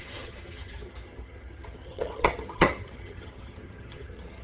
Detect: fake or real fake